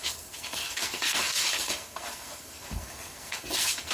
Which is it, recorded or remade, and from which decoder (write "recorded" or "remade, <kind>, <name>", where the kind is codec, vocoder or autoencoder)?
remade, codec, SNAC